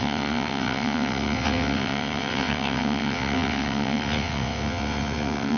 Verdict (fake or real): fake